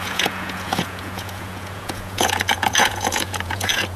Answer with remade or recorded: remade